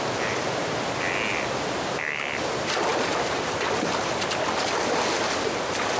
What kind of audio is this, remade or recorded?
recorded